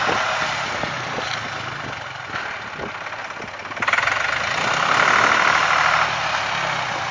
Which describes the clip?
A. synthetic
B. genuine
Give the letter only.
B